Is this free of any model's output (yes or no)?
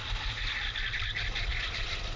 yes